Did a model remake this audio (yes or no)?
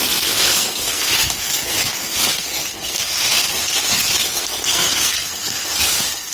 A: yes